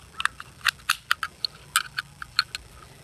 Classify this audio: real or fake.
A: real